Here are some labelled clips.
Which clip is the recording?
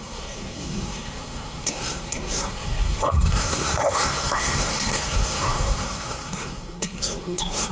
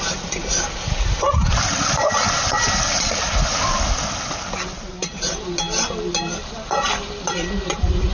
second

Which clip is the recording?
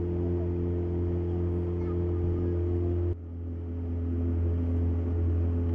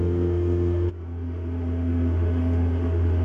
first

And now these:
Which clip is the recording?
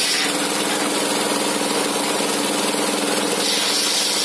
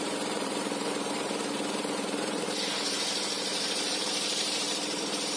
first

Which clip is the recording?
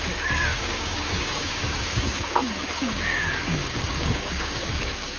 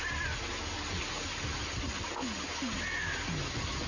second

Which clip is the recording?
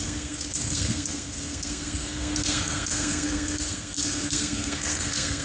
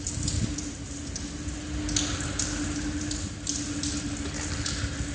second